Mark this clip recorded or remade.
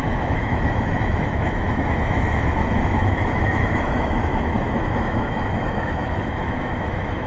remade